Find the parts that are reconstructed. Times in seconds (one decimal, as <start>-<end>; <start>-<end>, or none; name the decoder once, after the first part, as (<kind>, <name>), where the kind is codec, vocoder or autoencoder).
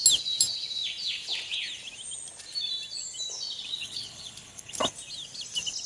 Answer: 3.6-4.8 (codec, HILCodec)